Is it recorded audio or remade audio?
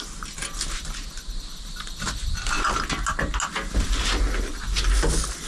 recorded